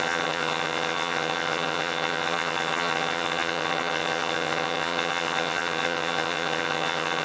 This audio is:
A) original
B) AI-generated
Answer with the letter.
B